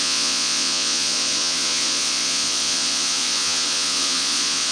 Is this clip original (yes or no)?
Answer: no